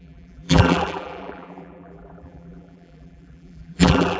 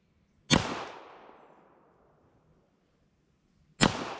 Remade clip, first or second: first